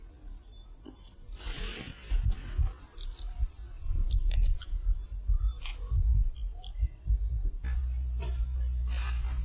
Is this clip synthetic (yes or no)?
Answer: no